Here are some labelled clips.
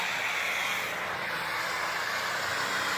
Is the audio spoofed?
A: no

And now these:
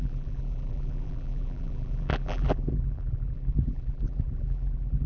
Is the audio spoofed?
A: yes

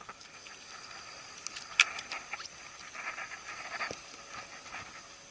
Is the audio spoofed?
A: no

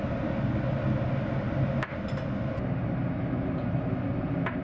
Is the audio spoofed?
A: no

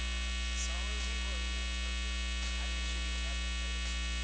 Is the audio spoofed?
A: no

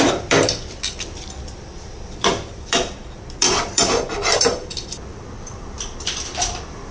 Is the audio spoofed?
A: yes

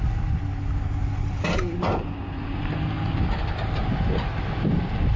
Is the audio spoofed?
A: no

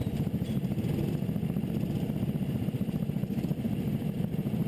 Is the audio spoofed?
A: yes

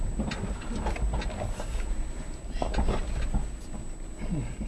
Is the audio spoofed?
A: no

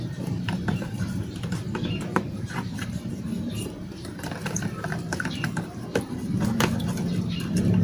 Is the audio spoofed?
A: yes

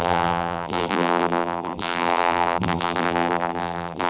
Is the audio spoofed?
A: yes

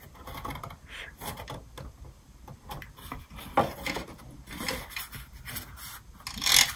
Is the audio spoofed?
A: no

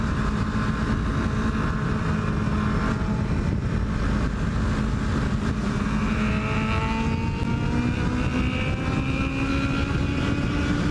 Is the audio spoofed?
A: no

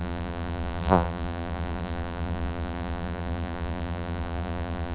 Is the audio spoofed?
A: yes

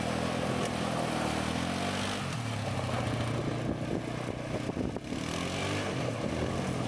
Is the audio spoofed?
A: no